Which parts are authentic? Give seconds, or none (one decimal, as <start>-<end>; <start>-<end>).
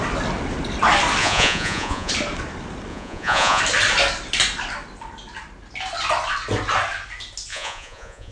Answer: 0.0-1.2; 2.1-2.9; 3.6-7.5